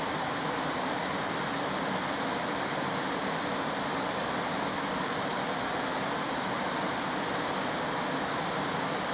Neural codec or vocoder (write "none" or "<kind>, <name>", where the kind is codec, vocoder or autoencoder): none